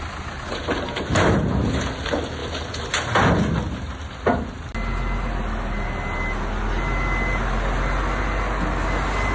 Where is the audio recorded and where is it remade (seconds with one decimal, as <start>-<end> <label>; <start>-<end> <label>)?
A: 0.0-9.3 recorded